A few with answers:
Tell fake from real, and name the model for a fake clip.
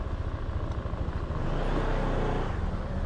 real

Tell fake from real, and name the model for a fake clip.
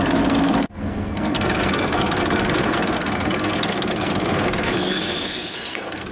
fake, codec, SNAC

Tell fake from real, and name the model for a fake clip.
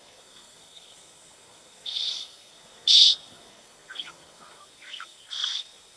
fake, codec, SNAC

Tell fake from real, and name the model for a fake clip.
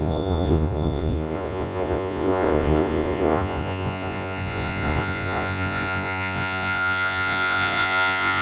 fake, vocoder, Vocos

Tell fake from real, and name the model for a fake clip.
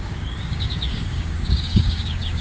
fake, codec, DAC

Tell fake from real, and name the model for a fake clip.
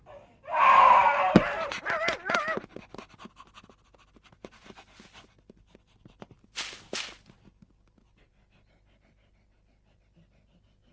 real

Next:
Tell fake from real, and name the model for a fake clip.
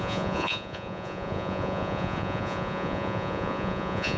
fake, vocoder, Vocos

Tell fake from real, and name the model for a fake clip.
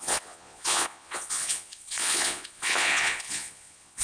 fake, vocoder, Vocos